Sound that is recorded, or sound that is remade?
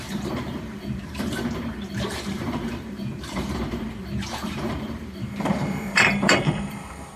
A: remade